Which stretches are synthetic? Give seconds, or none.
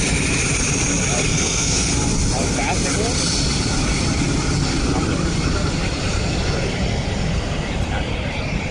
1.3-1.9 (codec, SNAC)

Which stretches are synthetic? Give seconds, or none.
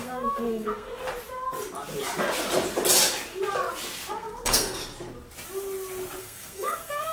0.0-1.0 (codec, SNAC); 4.1-4.8; 6.2-7.1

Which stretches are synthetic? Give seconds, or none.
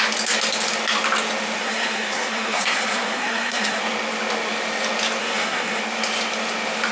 1.6-3.8 (codec, SNAC); 5.2-5.8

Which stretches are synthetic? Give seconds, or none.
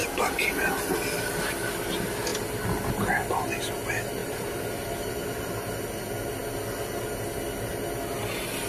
4.2-5.7 (vocoder, BigVGAN v2)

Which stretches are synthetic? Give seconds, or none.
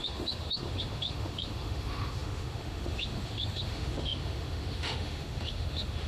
0.0-6.1 (autoencoder, DAC-VAE)